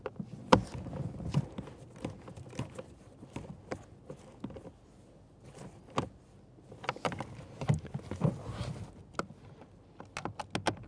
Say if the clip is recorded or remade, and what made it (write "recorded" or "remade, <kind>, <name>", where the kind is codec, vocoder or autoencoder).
recorded